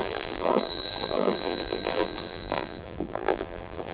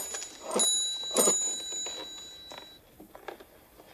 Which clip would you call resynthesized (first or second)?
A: first